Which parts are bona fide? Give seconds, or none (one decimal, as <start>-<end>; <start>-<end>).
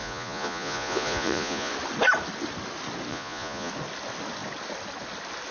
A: 1.7-3.1; 3.7-5.5